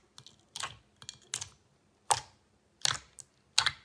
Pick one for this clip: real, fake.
real